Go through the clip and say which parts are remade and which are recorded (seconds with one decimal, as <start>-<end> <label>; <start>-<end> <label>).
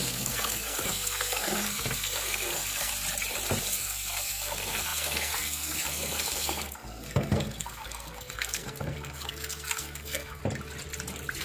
0.0-2.9 remade; 2.9-3.6 recorded; 3.6-10.4 remade; 10.4-11.4 recorded